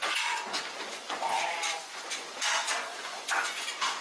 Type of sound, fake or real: fake